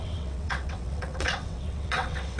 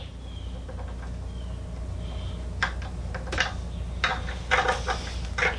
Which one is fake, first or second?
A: first